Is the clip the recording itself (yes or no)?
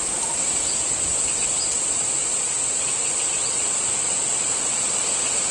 yes